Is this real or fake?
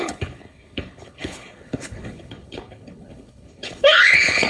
fake